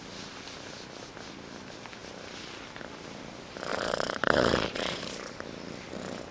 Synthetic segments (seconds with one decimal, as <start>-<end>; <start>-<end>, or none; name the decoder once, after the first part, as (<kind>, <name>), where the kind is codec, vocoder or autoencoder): 3.7-5.0 (vocoder, Vocos)